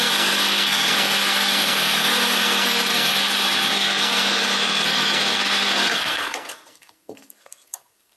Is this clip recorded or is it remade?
remade